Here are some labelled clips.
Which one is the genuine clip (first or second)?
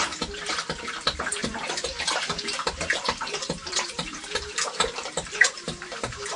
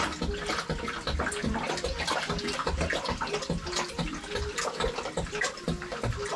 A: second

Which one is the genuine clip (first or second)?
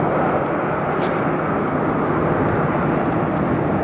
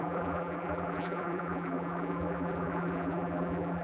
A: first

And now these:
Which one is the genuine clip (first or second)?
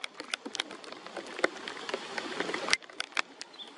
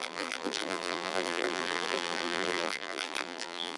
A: first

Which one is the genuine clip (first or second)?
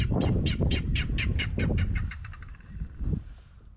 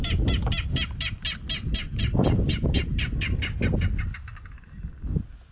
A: second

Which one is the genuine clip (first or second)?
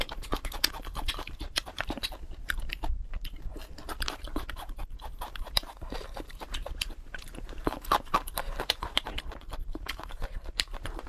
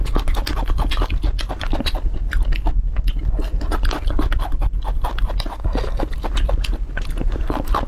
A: second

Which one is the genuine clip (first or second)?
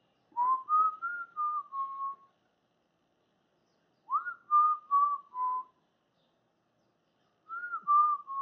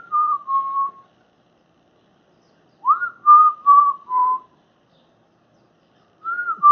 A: first